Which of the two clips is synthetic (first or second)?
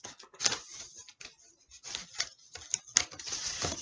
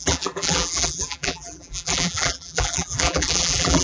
second